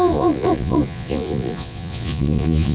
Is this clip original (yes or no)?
no